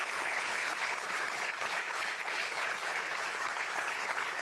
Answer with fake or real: fake